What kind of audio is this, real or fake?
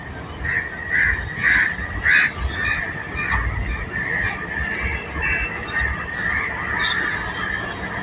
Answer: real